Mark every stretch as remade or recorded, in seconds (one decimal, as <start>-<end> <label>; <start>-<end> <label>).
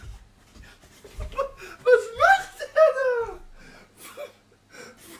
0.0-1.8 recorded; 1.8-2.6 remade; 2.6-5.2 recorded